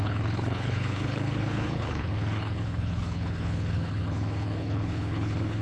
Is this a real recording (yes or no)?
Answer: no